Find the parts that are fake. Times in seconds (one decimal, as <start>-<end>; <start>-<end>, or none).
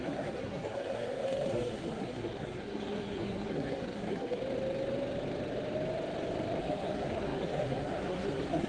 0.0-4.4; 6.6-8.7